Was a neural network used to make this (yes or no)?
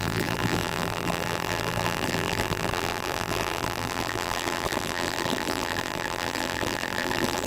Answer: yes